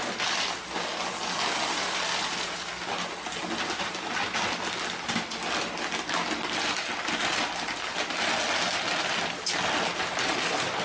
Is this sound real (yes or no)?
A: yes